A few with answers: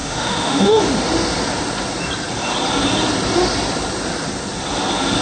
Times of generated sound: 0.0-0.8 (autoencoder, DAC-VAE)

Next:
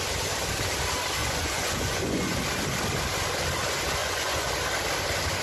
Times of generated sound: 1.2-2.4 (vocoder, Vocos); 4.0-4.5

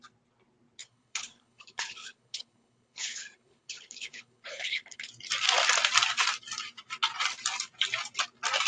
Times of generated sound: 0.8-5.1 (codec, HILCodec)

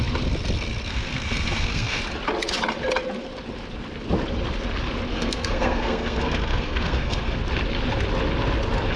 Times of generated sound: 0.9-2.0 (codec, SNAC); 5.1-7.4